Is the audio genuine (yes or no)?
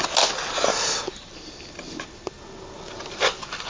yes